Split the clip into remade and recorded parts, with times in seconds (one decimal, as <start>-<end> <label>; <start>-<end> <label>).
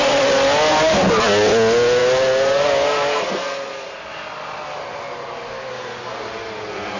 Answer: 0.0-7.0 recorded